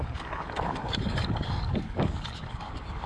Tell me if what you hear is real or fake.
fake